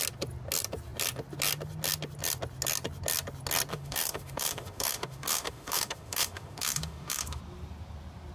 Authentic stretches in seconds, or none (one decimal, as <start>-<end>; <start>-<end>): 0.0-3.7; 7.4-8.3